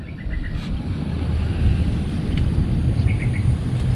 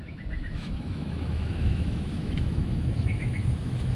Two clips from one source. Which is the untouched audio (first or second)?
first